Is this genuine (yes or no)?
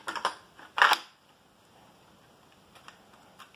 yes